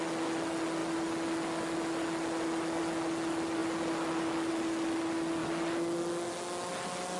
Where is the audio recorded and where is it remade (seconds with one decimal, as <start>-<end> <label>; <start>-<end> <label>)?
0.0-7.2 recorded